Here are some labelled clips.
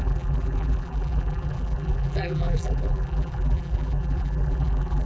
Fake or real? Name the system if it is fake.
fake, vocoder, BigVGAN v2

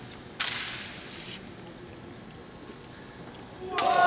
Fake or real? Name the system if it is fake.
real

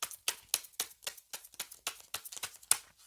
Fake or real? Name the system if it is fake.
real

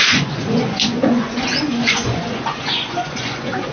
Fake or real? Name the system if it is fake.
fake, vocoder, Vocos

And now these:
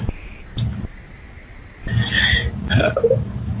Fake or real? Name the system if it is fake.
real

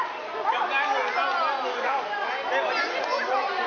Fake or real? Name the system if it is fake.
real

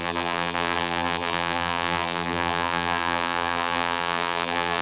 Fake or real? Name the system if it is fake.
fake, vocoder, BigVGAN v2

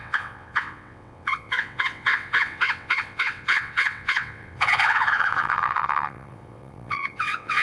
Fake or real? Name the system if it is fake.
fake, vocoder, WaveNeXt